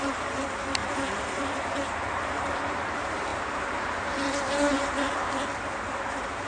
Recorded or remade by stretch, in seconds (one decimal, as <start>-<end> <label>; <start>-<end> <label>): 0.0-6.5 remade